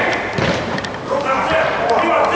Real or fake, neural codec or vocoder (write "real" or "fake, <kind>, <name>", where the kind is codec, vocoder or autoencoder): real